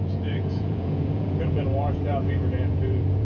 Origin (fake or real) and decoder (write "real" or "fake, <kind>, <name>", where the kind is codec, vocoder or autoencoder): fake, vocoder, Vocos